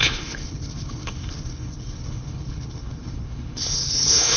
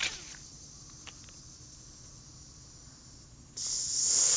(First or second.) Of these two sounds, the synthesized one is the first